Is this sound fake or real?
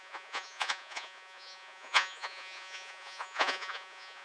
fake